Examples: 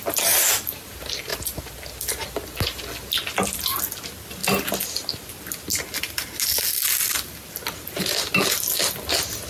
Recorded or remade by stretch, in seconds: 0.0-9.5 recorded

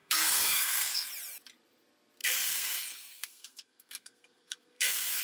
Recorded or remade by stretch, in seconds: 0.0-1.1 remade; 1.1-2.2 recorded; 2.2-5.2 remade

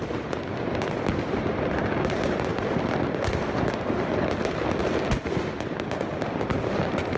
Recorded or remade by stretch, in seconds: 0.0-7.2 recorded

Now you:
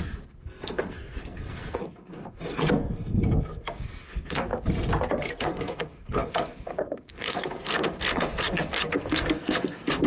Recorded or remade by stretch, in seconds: 0.0-4.5 remade; 4.5-5.3 recorded; 5.3-10.1 remade

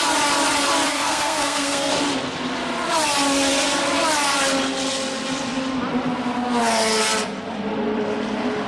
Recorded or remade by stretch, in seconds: 0.0-0.9 recorded; 0.9-1.9 remade; 1.9-8.7 recorded

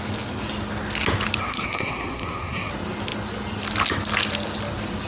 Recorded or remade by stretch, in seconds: 0.0-1.4 recorded; 1.4-2.7 remade; 2.7-5.1 recorded